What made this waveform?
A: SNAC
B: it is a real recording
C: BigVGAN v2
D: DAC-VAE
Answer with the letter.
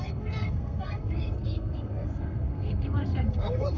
A